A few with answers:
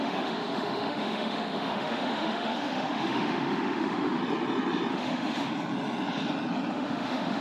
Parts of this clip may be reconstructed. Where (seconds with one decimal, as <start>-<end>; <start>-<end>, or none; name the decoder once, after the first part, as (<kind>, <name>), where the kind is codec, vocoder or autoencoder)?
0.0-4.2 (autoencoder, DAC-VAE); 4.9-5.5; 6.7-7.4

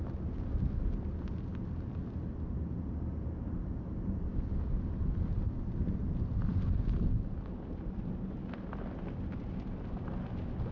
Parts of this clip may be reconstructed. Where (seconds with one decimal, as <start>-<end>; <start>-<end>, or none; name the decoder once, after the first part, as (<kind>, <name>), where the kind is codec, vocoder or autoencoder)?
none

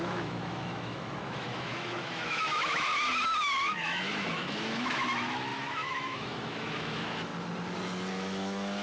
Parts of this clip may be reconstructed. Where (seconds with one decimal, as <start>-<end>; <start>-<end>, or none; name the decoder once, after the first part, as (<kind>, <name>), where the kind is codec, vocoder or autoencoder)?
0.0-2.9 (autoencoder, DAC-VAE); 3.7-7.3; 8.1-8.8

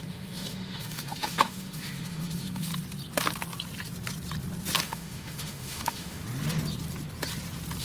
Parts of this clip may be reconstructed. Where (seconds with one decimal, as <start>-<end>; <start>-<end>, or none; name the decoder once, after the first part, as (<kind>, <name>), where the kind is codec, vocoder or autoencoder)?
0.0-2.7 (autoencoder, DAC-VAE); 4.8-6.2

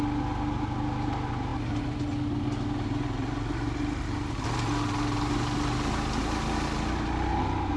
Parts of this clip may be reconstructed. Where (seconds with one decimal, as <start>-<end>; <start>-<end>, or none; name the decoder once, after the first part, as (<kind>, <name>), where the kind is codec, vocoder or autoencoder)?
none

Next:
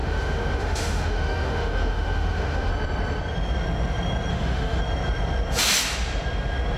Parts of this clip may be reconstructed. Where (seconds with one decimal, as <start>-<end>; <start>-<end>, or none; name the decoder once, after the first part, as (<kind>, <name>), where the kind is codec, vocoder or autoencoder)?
0.0-2.7 (autoencoder, DAC-VAE); 4.3-4.8

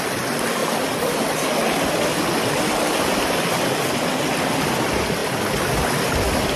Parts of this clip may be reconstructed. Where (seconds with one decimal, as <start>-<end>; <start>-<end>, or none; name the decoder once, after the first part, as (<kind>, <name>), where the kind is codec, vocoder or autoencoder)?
none

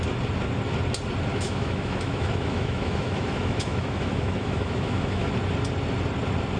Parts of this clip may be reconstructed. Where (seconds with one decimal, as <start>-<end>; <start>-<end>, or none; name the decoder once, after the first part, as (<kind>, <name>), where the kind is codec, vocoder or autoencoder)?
1.3-5.3 (autoencoder, DAC-VAE)